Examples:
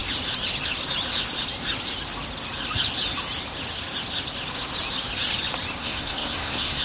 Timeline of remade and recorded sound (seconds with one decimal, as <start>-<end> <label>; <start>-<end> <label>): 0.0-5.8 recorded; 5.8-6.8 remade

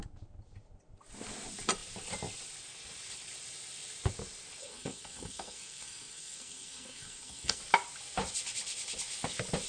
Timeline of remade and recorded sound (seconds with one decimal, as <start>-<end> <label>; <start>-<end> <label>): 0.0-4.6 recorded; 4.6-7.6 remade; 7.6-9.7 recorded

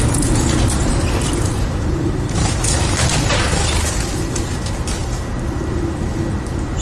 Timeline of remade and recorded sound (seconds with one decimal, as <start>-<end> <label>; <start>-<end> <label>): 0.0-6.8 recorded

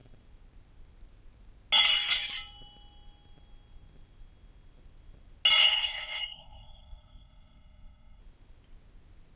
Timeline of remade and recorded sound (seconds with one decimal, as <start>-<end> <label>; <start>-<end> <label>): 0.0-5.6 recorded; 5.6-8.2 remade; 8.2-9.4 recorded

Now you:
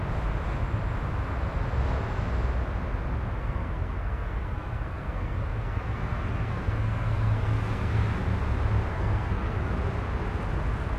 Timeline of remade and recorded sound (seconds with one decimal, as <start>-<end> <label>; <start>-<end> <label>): 0.0-3.4 recorded; 3.4-8.2 remade; 8.2-8.9 recorded; 8.9-9.7 remade; 9.7-11.0 recorded